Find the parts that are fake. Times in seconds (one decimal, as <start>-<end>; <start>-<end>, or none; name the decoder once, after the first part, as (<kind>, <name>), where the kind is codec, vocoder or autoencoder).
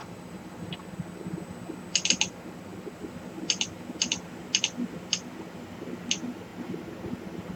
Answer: 0.0-0.7 (vocoder, BigVGAN v2)